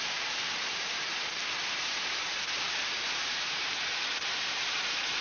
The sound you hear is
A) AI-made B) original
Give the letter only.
A